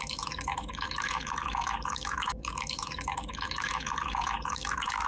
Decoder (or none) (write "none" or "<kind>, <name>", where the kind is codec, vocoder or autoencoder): autoencoder, DAC-VAE